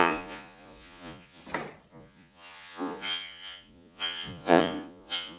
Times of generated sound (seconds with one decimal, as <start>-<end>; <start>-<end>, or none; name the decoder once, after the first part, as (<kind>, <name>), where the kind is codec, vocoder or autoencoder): 0.0-1.4 (vocoder, Vocos); 1.9-5.4